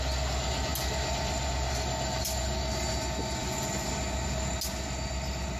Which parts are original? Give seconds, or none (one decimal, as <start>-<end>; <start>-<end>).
0.0-5.6